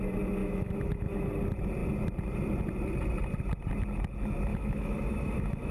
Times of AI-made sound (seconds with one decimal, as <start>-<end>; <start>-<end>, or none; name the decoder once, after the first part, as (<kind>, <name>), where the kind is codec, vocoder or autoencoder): 0.4-1.3 (autoencoder, DAC-VAE); 4.5-5.7